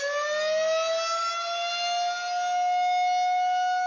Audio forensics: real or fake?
real